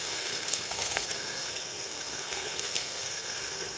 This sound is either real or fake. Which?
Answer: fake